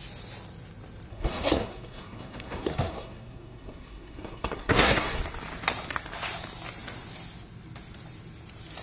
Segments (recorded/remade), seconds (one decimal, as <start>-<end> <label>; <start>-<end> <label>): 0.0-1.1 recorded; 1.1-5.2 remade; 5.2-8.8 recorded